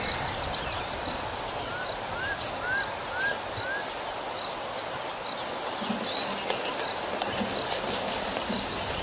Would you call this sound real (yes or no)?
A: yes